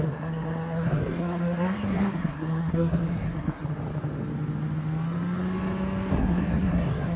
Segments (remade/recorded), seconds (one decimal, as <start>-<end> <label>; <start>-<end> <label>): 0.0-3.6 remade; 3.6-6.1 recorded; 6.1-7.2 remade